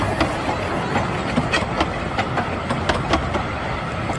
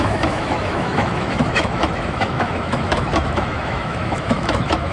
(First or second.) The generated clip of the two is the second